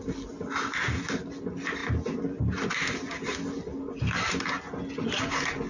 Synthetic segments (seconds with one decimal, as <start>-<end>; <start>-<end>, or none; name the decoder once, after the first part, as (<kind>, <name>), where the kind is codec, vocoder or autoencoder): none